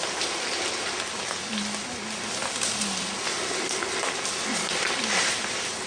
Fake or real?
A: real